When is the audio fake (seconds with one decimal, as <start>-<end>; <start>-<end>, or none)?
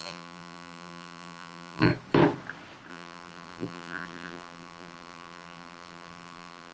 0.0-1.9; 2.9-6.7